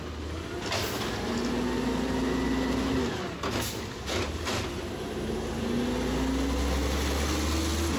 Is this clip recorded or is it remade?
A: recorded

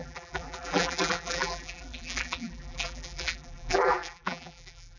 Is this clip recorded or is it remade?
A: remade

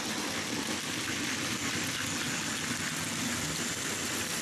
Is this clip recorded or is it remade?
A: recorded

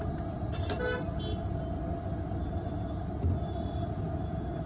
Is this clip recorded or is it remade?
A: recorded